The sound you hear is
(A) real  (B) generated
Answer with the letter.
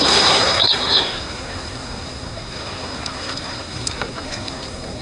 B